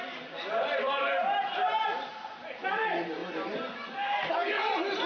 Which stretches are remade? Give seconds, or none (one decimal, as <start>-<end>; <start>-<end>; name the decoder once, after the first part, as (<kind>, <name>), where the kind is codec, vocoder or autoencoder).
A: 0.0-1.2 (vocoder, BigVGAN v2); 2.1-3.2; 4.3-5.1